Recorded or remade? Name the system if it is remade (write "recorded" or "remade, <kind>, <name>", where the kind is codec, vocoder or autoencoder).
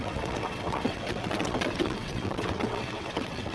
remade, vocoder, WaveNeXt